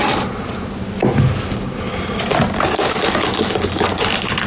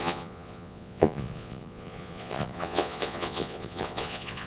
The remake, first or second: second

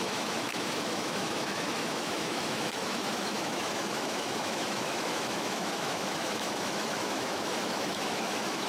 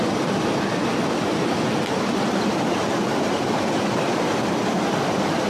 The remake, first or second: first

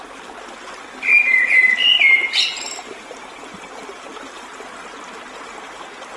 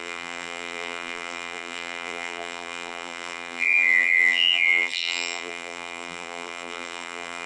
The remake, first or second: second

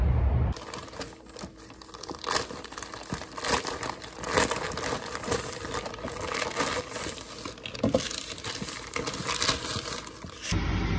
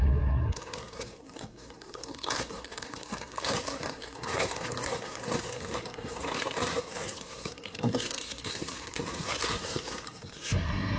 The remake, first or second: second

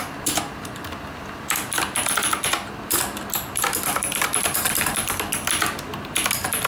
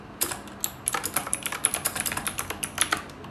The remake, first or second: first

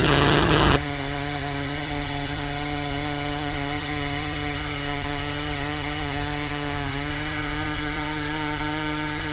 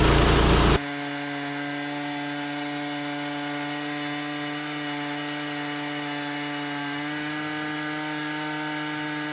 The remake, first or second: first